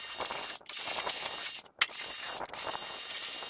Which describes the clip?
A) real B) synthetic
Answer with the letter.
A